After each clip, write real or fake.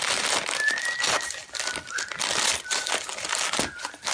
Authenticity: real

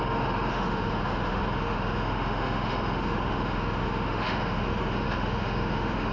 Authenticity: fake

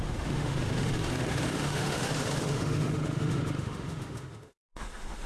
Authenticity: fake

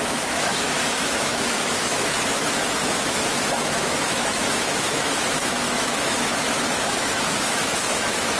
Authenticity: fake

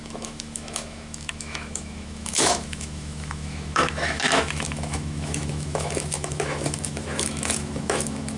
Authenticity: fake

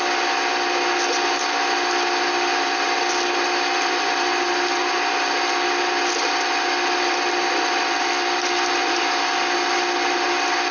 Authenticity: real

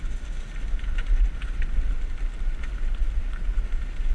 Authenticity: real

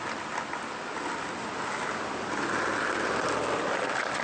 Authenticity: real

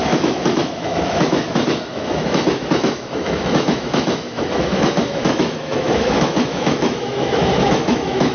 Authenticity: fake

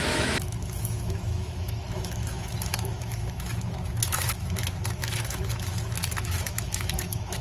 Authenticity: fake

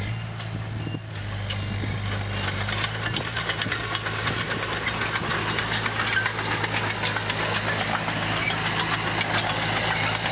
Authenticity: real